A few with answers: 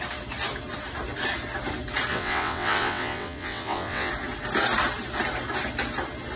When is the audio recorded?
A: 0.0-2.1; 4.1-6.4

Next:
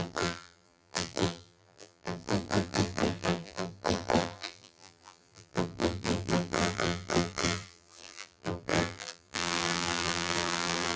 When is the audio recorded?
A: none

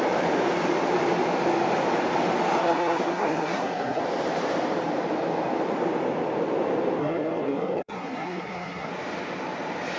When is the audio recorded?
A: 0.0-2.6; 4.0-7.0; 8.9-10.0

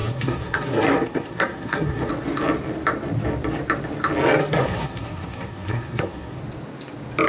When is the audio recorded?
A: 2.1-4.4; 6.4-7.3

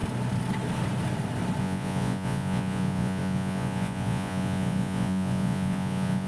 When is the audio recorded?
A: 0.0-1.6